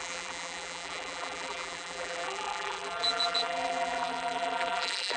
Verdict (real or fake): fake